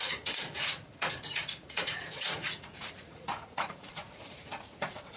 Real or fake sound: fake